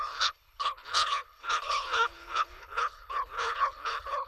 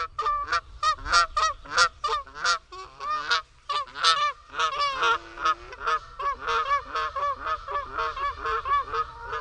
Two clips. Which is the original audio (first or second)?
second